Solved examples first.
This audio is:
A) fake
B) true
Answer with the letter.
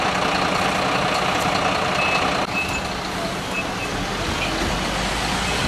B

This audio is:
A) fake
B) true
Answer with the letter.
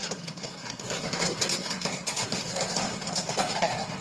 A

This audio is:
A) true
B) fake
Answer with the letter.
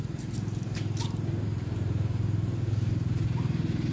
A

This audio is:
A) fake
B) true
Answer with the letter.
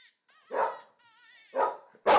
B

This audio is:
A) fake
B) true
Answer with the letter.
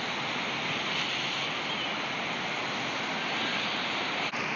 B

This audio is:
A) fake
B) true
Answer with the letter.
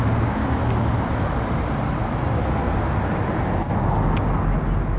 B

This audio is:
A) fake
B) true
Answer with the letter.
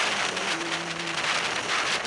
B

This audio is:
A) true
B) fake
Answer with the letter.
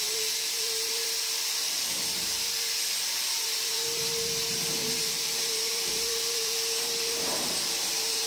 B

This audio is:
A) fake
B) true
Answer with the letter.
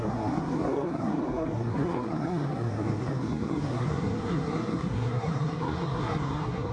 A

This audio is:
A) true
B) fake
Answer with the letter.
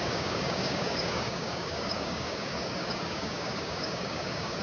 B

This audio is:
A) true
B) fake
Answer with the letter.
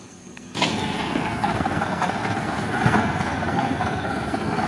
B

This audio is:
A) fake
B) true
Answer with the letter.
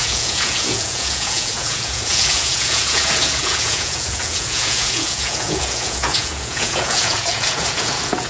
A